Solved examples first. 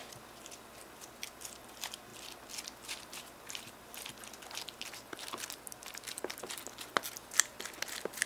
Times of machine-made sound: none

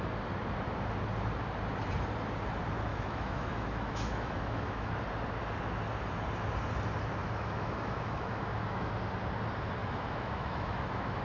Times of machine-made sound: 2.9-4.9 (autoencoder, DAC-VAE); 7.2-8.9; 9.8-11.2

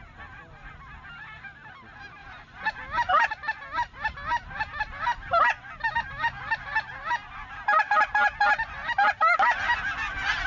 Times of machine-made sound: none

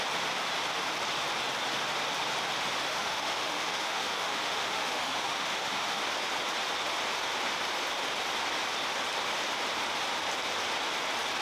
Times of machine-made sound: 2.9-6.0 (autoencoder, DAC-VAE)

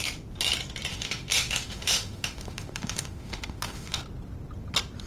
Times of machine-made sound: 0.9-4.0 (autoencoder, DAC-VAE)

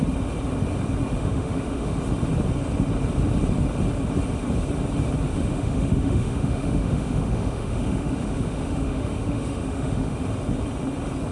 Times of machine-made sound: 1.2-2.0 (autoencoder, DAC-VAE); 5.3-10.2

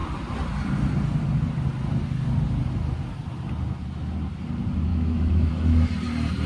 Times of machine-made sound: 4.9-5.5 (autoencoder, DAC-VAE)